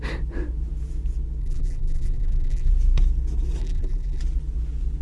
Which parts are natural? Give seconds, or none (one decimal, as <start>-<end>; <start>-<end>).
0.0-1.4; 2.7-3.6; 4.2-5.0